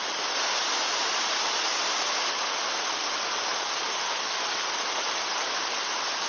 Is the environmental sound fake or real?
real